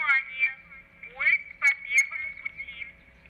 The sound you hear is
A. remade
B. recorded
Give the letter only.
B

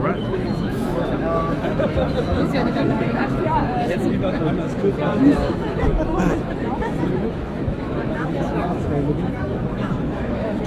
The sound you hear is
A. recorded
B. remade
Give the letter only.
B